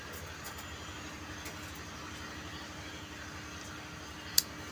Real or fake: real